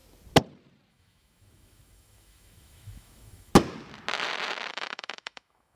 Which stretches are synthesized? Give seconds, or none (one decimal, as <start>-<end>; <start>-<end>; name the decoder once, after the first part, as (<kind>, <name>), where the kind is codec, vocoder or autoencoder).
0.9-3.5 (autoencoder, DAC-VAE); 4.7-5.8

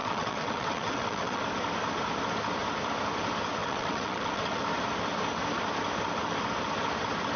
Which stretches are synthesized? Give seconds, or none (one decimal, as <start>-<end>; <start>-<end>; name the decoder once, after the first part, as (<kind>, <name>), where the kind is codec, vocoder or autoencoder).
0.0-1.4 (vocoder, WaveNeXt); 3.6-4.6

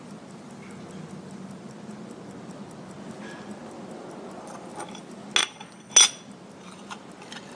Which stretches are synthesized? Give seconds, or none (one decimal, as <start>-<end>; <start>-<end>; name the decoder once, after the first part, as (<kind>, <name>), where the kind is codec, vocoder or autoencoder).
5.4-5.9 (vocoder, WaveNeXt)